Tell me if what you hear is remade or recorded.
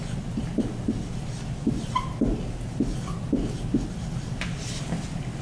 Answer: recorded